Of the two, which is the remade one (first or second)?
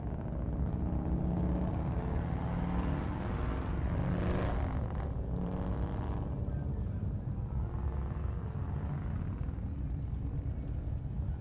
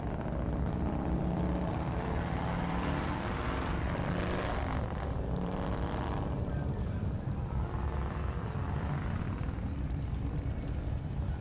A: second